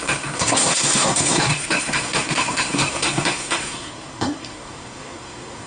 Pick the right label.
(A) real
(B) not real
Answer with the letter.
B